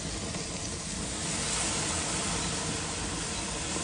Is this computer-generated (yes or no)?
no